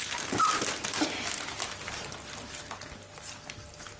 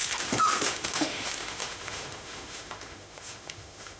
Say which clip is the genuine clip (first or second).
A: first